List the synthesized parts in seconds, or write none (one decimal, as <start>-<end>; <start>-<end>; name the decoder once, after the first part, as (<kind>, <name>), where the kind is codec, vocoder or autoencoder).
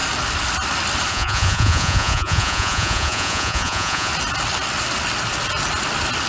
1.1-4.1 (vocoder, Vocos)